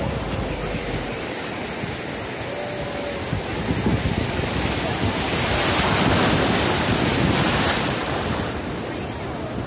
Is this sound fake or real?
real